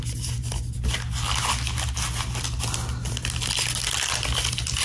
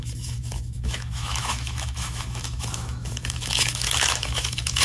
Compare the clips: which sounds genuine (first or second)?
first